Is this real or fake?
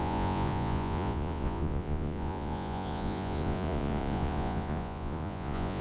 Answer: fake